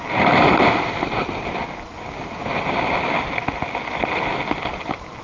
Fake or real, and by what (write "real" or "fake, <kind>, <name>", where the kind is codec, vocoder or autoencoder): real